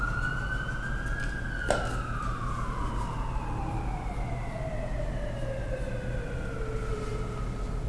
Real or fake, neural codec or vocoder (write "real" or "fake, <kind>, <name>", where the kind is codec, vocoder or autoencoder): real